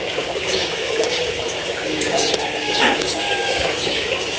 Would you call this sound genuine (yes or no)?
no